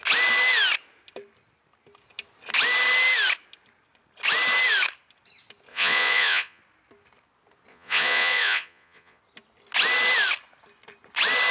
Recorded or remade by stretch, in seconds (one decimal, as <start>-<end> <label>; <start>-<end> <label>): 0.0-5.7 recorded; 5.7-6.6 remade; 6.6-7.7 recorded; 7.7-9.2 remade; 9.2-11.5 recorded